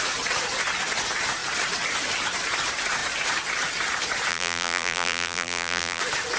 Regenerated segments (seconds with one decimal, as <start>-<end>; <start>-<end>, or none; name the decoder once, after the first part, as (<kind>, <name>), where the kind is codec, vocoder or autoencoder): 4.3-6.0 (vocoder, BigVGAN v2)

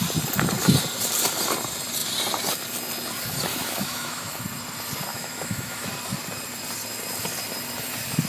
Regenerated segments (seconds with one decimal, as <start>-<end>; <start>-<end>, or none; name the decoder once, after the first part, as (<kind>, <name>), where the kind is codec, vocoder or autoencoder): 3.5-4.4 (autoencoder, DAC-VAE); 5.1-5.9

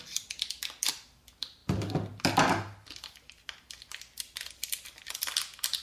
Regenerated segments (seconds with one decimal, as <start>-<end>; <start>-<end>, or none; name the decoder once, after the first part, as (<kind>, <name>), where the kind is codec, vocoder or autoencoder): none

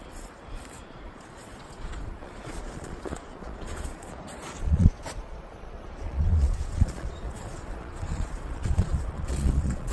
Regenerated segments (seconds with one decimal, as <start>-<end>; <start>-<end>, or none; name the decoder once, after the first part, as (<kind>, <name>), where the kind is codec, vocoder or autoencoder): 0.8-4.1 (vocoder, Vocos); 4.6-9.9